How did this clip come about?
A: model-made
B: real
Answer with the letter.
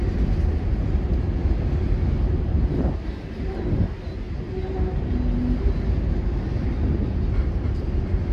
B